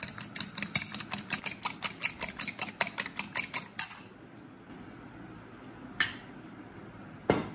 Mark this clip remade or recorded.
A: recorded